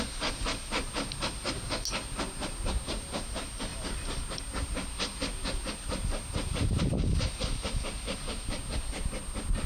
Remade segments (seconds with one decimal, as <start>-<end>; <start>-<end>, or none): none